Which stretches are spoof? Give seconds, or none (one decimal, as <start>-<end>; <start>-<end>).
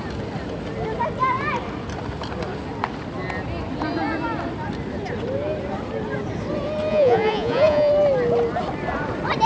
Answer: 6.9-7.9